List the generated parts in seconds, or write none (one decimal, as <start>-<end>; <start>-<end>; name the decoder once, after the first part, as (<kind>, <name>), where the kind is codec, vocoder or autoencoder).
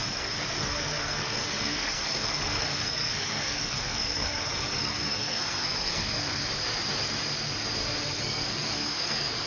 0.0-6.4 (codec, SNAC); 8.2-9.5